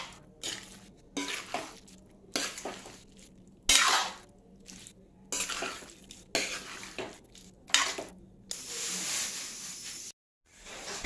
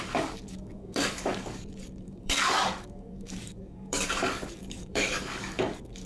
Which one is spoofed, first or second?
second